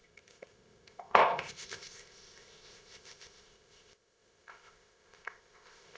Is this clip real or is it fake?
fake